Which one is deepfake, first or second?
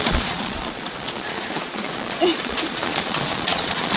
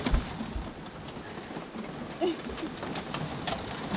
first